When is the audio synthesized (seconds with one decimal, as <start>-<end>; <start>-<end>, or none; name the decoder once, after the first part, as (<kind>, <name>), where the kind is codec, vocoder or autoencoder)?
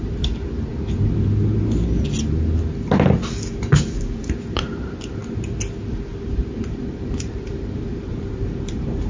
0.0-0.7 (vocoder, BigVGAN v2); 4.7-5.2; 6.9-9.1